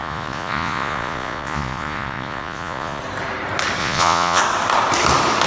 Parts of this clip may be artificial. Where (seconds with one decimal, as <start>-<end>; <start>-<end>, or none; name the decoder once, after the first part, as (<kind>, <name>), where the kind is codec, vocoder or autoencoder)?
0.0-3.0 (vocoder, Vocos); 3.8-4.4